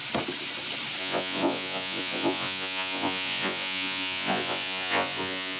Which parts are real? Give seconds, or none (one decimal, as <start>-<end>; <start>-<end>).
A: 0.0-1.0